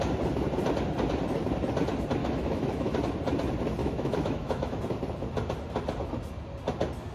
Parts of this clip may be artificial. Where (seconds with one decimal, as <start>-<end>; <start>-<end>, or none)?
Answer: 2.2-3.0; 3.8-4.8